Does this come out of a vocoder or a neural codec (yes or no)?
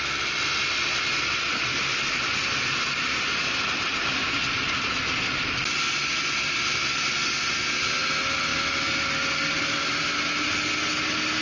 no